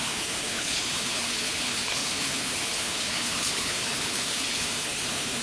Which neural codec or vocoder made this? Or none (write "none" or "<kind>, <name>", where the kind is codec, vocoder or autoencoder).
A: codec, HILCodec